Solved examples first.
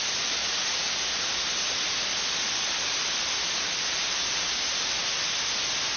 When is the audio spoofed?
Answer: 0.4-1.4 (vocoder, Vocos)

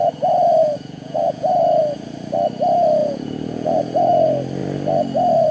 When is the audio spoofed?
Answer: 0.6-1.5 (vocoder, Vocos); 3.0-4.1

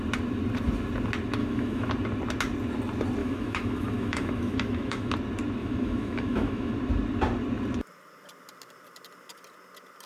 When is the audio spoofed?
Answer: 1.4-1.9 (autoencoder, DAC-VAE); 3.2-5.1; 5.6-6.7

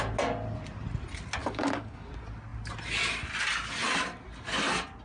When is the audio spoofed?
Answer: 1.4-2.1 (codec, DAC)

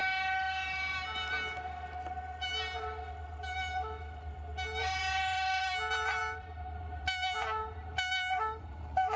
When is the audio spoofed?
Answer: 4.8-9.2 (vocoder, BigVGAN v2)

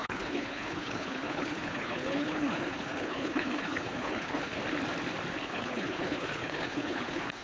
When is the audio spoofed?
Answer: 0.0-4.6 (codec, HILCodec); 5.4-7.4

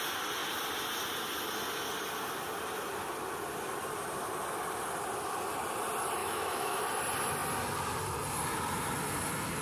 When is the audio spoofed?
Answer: 6.2-6.8 (autoencoder, DAC-VAE)

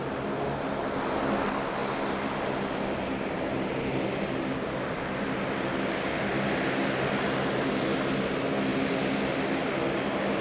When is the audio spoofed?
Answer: none